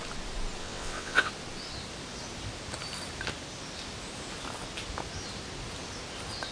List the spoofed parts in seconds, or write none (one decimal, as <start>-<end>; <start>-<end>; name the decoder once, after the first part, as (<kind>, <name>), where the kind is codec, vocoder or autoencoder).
0.6-1.3 (vocoder, WaveNeXt)